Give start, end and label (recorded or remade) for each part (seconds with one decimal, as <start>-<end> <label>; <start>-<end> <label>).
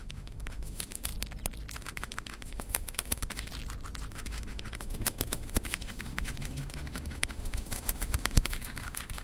0.0-1.1 remade; 1.1-1.8 recorded; 1.8-3.5 remade; 3.5-4.1 recorded; 4.1-9.2 remade